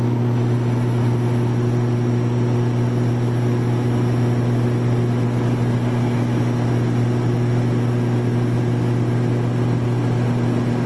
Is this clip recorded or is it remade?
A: recorded